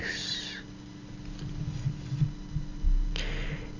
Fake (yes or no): no